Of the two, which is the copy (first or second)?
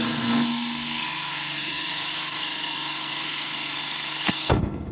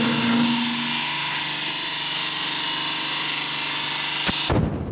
first